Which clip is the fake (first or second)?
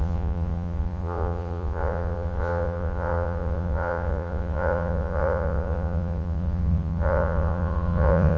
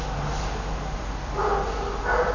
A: first